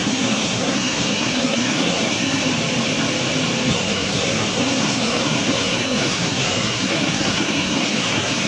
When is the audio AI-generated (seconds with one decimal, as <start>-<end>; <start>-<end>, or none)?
0.0-2.4; 3.7-8.5